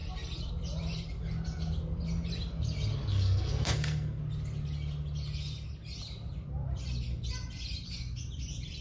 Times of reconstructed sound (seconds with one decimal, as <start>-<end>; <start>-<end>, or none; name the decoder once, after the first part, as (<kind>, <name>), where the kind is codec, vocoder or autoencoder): 3.1-4.2 (codec, SNAC)